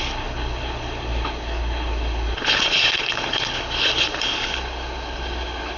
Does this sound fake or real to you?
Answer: fake